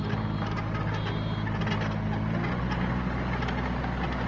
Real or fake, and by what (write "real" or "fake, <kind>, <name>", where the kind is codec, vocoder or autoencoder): real